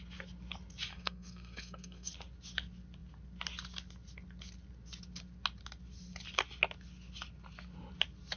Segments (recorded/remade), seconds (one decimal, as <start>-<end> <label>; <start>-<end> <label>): 0.0-0.9 recorded; 0.9-2.1 remade; 2.1-8.4 recorded